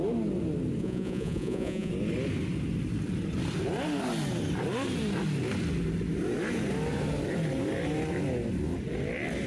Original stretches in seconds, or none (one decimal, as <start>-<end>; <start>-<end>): 0.0-0.8; 1.9-9.5